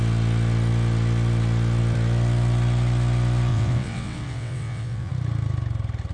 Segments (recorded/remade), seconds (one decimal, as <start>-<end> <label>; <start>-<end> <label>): 0.0-3.5 recorded; 3.5-5.1 remade; 5.1-6.1 recorded